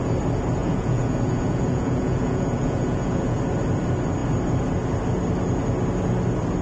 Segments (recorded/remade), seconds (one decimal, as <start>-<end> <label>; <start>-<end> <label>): 0.0-0.6 recorded; 0.6-3.4 remade; 3.4-6.6 recorded

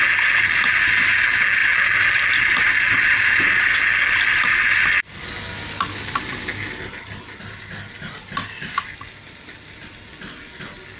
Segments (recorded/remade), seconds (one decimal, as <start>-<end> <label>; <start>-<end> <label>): 0.0-11.0 recorded

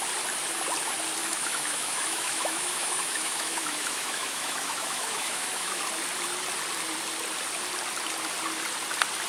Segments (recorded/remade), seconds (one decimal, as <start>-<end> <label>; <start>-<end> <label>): 0.0-1.2 recorded; 1.2-5.8 remade; 5.8-9.3 recorded

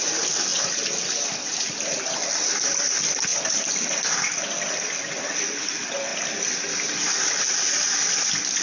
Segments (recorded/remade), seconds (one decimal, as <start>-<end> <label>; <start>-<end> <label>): 0.0-8.6 recorded